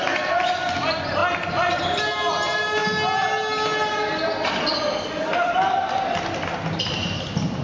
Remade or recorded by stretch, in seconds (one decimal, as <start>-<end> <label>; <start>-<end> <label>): 0.0-7.6 recorded